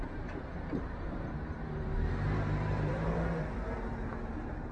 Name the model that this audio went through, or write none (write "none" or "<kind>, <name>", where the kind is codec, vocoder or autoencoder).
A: vocoder, BigVGAN v2